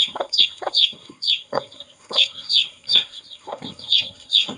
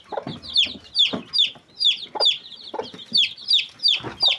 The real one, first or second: second